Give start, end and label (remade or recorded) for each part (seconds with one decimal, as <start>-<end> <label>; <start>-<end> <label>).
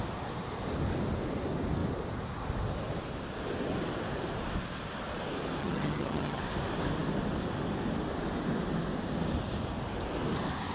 0.0-5.6 recorded; 5.6-6.4 remade; 6.4-10.7 recorded